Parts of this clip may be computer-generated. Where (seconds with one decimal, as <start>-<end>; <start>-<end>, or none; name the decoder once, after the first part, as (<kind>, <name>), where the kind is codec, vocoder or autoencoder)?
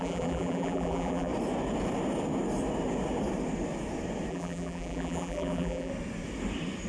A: 0.0-1.3 (vocoder, BigVGAN v2); 4.3-5.9